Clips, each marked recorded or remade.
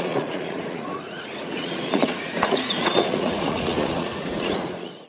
remade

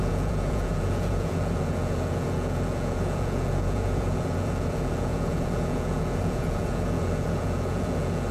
remade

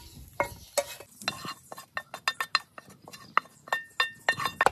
recorded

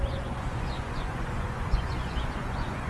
remade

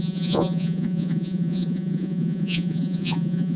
remade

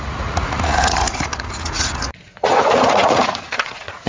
remade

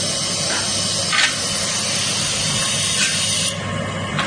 recorded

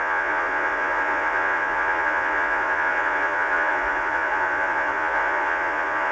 remade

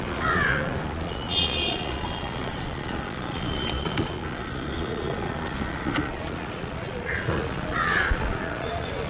remade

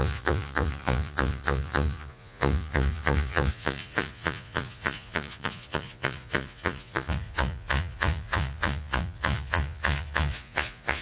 remade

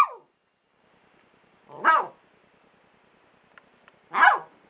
recorded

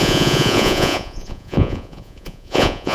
remade